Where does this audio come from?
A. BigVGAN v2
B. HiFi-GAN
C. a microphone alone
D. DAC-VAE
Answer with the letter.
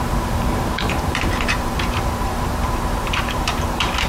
A